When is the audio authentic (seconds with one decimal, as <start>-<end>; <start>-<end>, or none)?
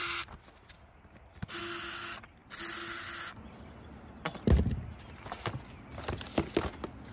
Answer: 0.0-7.1